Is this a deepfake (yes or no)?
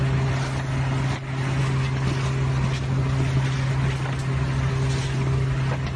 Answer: no